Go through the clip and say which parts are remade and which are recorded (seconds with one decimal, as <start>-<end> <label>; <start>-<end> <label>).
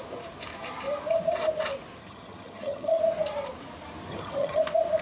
0.0-2.0 recorded; 2.0-3.0 remade; 3.0-4.1 recorded; 4.1-4.6 remade; 4.6-5.0 recorded